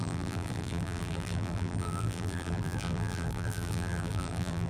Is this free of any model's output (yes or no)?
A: no